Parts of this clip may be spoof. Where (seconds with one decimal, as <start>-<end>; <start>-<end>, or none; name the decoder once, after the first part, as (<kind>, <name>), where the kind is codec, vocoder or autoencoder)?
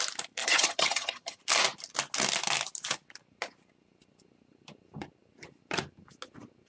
0.4-1.4 (vocoder, HiFi-GAN)